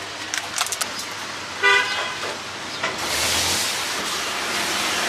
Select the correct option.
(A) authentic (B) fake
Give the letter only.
A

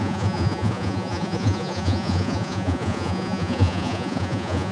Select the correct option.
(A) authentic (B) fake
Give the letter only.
B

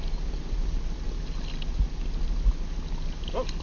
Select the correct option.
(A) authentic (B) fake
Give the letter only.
A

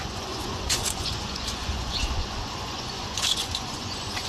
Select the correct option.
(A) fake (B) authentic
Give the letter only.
A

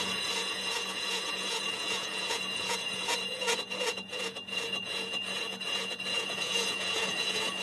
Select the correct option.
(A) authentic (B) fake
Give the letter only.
B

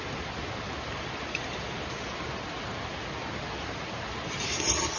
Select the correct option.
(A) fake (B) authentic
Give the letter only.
B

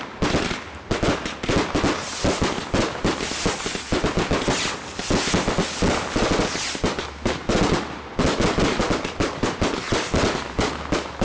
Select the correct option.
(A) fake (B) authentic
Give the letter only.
B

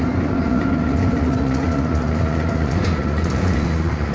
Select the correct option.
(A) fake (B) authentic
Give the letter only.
A